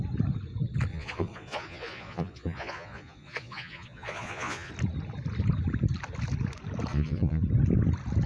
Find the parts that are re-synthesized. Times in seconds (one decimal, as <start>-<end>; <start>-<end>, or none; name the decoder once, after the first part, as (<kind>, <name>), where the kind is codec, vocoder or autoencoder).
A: 0.9-4.7 (vocoder, Vocos); 6.9-7.4